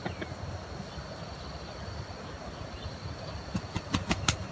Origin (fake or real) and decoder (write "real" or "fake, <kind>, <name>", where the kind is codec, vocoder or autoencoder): real